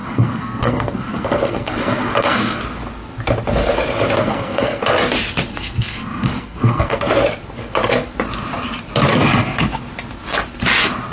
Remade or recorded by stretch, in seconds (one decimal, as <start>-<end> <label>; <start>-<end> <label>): 0.0-2.6 remade; 2.6-4.2 recorded; 4.2-4.8 remade; 4.8-5.5 recorded; 5.5-7.0 remade; 7.0-11.1 recorded